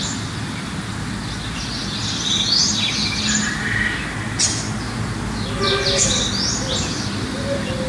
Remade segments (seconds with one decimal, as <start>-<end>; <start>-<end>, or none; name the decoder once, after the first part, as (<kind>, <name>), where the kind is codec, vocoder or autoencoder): none